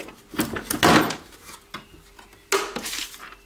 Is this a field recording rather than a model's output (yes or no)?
yes